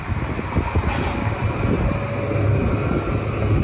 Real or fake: real